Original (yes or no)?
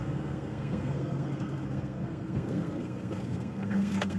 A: no